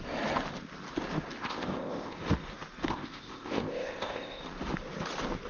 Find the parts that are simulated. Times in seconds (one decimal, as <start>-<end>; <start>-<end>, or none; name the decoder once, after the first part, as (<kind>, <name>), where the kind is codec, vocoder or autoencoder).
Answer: 1.4-2.2 (codec, ZipCodec); 2.9-4.4